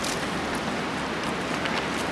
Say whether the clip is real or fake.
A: real